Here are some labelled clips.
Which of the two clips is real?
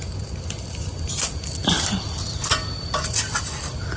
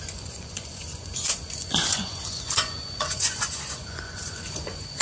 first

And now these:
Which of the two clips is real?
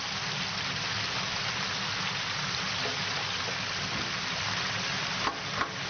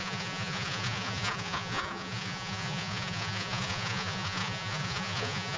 first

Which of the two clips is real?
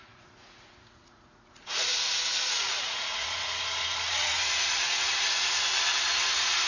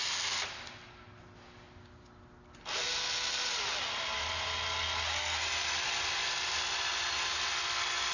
second